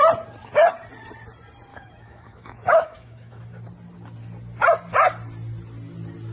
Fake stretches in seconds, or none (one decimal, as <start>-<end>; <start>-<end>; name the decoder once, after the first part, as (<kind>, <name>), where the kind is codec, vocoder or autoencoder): 1.7-3.4 (autoencoder, DAC-VAE)